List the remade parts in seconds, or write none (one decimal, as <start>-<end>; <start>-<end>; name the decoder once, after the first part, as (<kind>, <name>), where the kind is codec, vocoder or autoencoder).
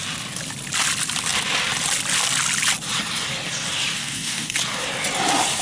4.0-4.6 (codec, DAC)